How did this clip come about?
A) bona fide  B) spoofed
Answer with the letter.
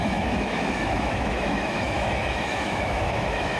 B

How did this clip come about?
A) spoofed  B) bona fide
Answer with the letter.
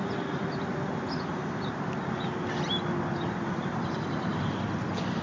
B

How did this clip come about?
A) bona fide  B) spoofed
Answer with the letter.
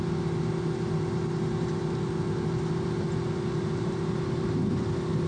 A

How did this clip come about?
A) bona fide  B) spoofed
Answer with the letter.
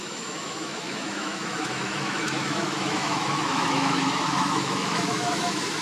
B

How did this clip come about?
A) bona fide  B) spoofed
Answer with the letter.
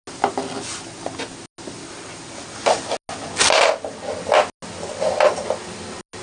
A